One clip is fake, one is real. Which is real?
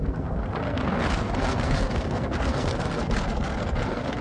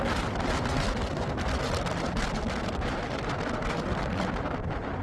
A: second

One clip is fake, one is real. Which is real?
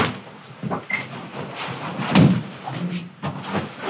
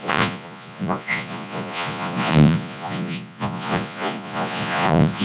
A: first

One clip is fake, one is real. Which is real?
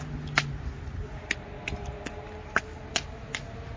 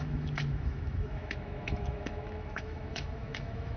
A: first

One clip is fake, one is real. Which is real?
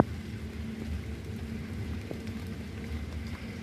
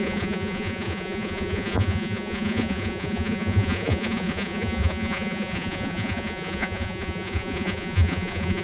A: first